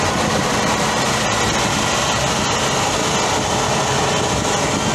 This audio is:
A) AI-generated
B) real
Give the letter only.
B